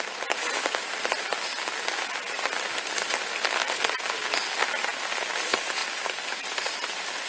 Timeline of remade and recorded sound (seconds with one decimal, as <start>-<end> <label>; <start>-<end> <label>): 0.0-7.3 recorded